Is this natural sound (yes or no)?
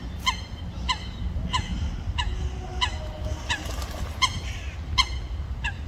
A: yes